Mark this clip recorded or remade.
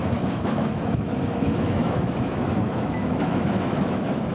remade